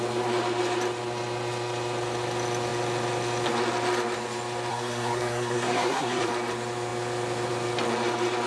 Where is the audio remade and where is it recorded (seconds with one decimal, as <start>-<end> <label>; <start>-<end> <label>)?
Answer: 0.0-4.7 recorded; 4.7-6.3 remade; 6.3-8.5 recorded